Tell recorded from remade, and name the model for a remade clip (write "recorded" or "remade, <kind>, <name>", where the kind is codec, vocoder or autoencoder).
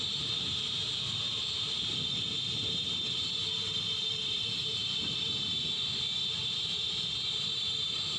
remade, vocoder, BigVGAN v2